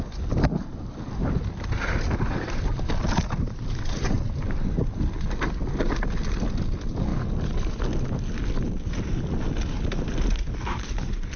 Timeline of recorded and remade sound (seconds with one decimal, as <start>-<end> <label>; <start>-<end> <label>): 0.0-11.4 recorded